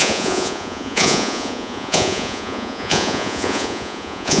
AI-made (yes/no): yes